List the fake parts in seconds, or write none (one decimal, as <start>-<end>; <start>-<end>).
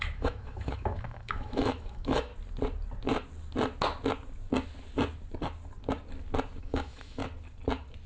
0.0-2.3; 6.6-7.2